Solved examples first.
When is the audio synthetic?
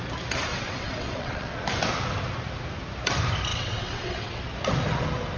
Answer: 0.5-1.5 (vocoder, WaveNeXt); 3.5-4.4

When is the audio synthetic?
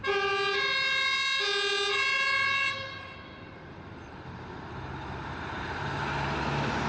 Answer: 2.8-6.0 (vocoder, BigVGAN v2)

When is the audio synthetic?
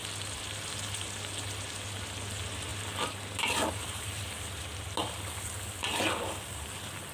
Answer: none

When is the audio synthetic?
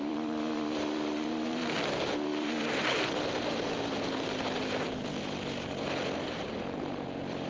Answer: 0.0-5.2 (vocoder, BigVGAN v2); 6.3-7.5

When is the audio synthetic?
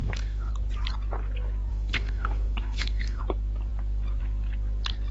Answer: 0.0-0.5 (autoencoder, DAC-VAE); 1.7-3.2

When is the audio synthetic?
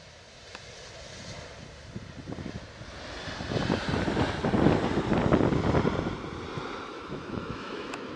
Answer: 6.9-8.2 (autoencoder, DAC-VAE)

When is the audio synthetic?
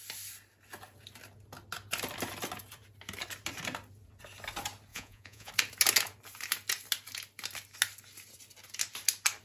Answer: 4.9-5.5 (vocoder, Vocos)